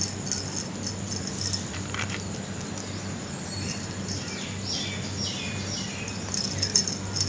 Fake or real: real